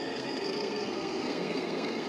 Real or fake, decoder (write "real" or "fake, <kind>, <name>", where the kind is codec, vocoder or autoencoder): fake, codec, SNAC